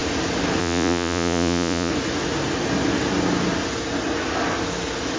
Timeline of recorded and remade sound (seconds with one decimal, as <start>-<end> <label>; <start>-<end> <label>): 0.0-0.6 recorded; 0.6-1.9 remade; 1.9-5.2 recorded